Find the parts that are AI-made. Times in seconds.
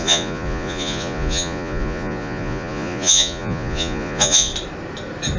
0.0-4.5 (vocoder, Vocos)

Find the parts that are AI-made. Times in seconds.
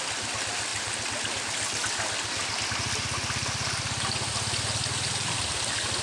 none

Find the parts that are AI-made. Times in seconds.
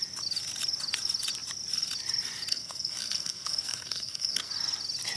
2.5-4.5 (codec, SNAC)